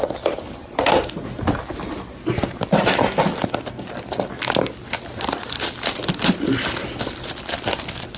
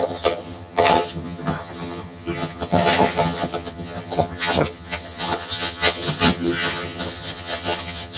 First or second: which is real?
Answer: first